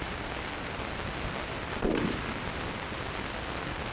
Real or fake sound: real